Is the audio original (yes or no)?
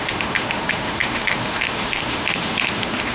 no